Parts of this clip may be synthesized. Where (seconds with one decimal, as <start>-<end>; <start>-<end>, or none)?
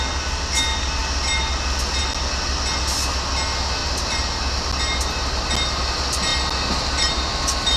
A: 3.8-4.6